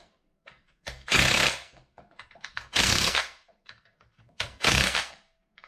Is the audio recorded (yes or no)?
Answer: no